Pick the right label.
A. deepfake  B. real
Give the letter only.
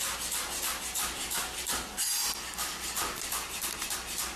B